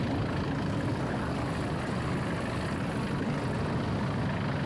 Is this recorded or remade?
recorded